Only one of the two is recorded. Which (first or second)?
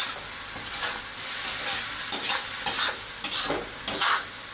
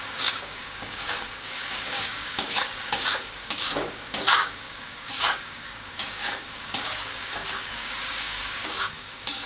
first